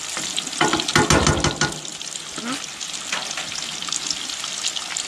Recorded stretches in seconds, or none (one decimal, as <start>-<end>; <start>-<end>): 0.0-5.1